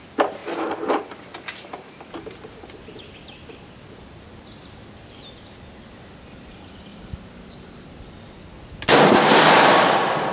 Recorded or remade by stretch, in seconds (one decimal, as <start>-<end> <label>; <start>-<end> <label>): 0.0-10.3 recorded